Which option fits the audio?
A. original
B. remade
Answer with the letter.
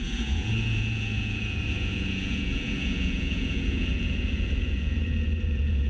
B